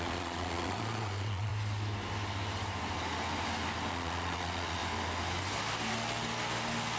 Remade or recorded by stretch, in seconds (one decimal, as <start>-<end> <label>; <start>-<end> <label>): 0.0-1.5 remade; 1.5-3.9 recorded; 3.9-4.8 remade; 4.8-7.0 recorded